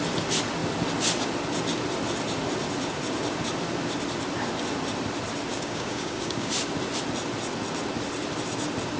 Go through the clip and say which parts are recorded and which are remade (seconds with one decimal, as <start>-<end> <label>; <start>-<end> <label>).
0.0-5.5 recorded; 5.5-6.5 remade; 6.5-9.0 recorded